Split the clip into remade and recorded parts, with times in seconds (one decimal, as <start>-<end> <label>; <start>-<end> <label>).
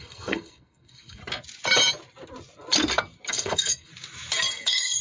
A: 0.0-1.2 remade; 1.2-3.3 recorded; 3.3-3.9 remade; 3.9-4.5 recorded; 4.5-5.0 remade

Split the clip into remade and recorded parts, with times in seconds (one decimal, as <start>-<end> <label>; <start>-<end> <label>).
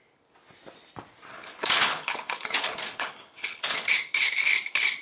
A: 0.0-1.3 recorded; 1.3-3.9 remade; 3.9-5.0 recorded